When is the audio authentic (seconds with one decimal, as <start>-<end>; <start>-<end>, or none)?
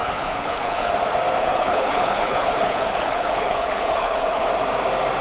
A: 0.9-1.4; 4.5-5.2